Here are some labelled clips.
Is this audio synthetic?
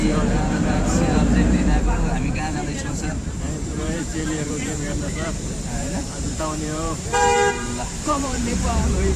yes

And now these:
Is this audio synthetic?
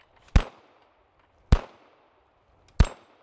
no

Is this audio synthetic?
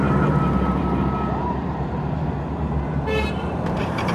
yes